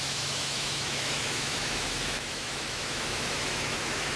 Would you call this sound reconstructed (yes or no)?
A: yes